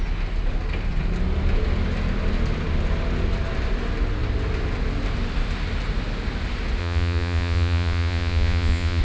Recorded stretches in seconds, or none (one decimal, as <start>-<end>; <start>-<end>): 0.0-6.8